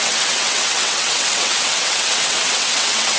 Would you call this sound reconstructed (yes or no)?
yes